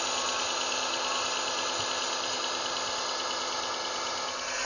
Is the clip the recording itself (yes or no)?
yes